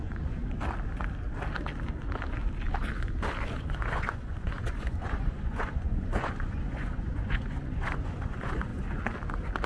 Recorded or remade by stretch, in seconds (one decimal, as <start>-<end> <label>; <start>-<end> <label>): 0.0-0.4 remade; 0.4-3.5 recorded; 3.5-8.7 remade; 8.7-9.7 recorded